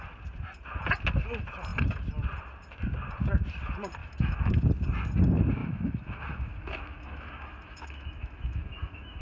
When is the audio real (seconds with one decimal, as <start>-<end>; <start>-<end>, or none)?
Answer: 0.0-4.0; 4.5-5.6